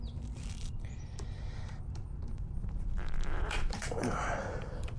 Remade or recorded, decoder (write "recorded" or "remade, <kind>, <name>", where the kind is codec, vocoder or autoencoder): remade, vocoder, BigVGAN v2